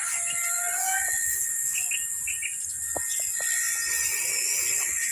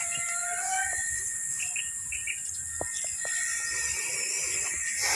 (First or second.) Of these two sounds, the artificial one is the second